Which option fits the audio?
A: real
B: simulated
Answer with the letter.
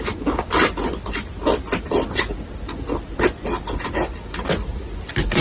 A